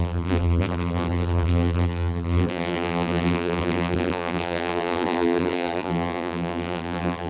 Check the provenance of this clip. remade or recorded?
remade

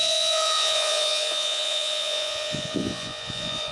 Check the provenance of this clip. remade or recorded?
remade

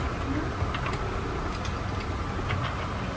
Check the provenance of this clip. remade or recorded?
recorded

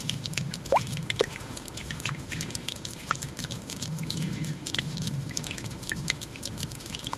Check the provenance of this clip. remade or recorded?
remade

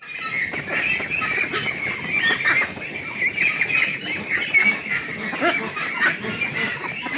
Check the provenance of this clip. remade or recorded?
recorded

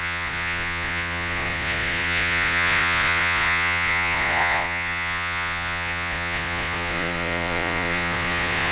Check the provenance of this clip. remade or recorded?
remade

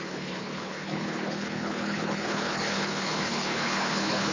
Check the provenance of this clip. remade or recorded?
remade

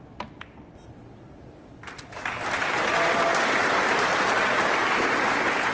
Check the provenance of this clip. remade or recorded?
recorded